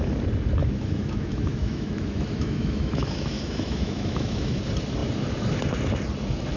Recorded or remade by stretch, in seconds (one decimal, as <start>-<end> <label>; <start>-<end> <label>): 0.0-0.6 recorded; 0.6-4.6 remade; 4.6-6.6 recorded